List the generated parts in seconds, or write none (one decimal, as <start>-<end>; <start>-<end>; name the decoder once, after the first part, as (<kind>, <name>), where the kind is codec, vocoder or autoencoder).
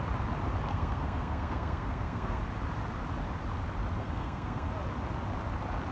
0.7-2.4 (codec, SNAC); 4.0-4.7